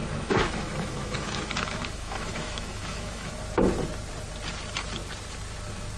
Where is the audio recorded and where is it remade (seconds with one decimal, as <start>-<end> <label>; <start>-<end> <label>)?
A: 0.0-3.3 remade; 3.3-6.0 recorded